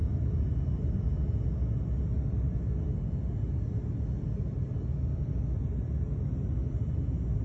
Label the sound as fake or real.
real